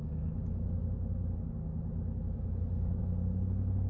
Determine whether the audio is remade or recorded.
recorded